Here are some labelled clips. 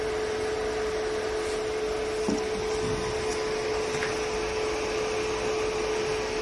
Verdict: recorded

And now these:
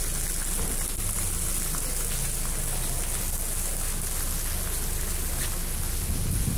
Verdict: recorded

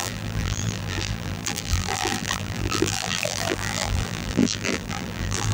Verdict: remade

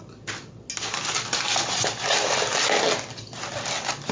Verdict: recorded